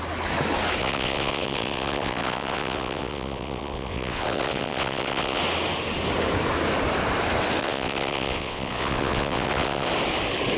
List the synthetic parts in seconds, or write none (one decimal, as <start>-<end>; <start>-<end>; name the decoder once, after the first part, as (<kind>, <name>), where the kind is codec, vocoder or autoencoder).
0.8-5.4 (vocoder, WaveNeXt); 7.6-9.9